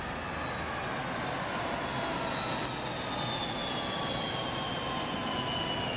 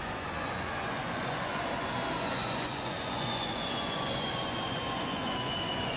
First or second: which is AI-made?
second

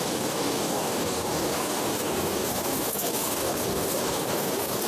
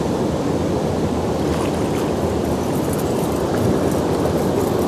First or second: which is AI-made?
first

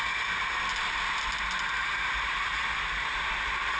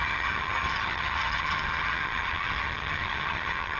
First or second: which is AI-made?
second